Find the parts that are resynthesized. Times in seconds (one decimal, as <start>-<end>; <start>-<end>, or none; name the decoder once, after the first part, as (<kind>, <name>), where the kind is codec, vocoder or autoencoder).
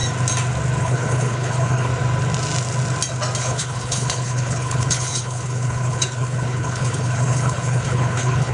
0.8-1.9 (codec, HILCodec); 3.4-8.5